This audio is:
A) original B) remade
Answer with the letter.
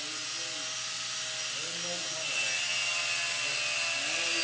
A